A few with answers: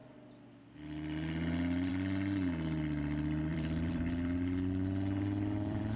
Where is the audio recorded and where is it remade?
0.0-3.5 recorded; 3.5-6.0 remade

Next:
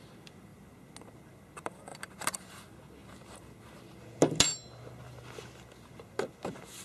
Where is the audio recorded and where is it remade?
0.0-6.8 recorded

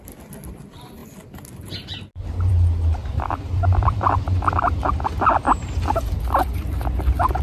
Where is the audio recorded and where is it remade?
0.0-3.0 recorded; 3.0-7.4 remade